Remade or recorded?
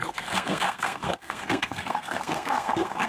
remade